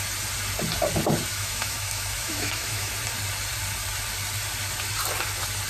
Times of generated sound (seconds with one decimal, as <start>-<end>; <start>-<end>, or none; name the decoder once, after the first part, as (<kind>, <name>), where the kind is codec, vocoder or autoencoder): 1.3-2.9 (autoencoder, DAC-VAE)